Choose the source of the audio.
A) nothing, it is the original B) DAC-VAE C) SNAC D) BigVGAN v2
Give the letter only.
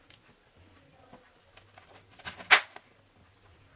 A